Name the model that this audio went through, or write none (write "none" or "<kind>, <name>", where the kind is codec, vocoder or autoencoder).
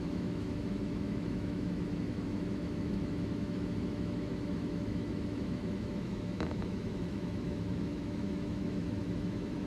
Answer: autoencoder, DAC-VAE